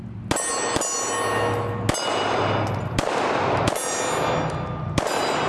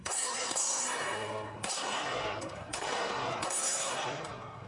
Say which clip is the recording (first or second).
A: first